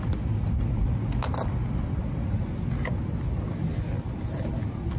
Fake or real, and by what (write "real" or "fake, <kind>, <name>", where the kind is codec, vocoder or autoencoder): real